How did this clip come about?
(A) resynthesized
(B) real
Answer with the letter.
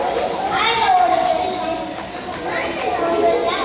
B